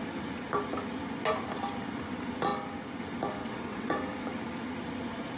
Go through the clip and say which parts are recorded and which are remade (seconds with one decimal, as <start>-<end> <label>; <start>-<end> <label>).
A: 0.0-3.4 recorded; 3.4-4.0 remade; 4.0-5.4 recorded